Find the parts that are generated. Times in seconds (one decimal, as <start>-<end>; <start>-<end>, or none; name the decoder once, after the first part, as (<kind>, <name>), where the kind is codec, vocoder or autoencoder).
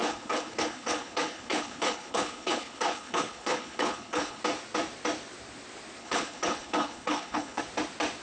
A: 0.0-4.4 (codec, HILCodec); 6.0-7.6